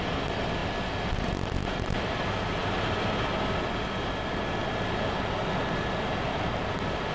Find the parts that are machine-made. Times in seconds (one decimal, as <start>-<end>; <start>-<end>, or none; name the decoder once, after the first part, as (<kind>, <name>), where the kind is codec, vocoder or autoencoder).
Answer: none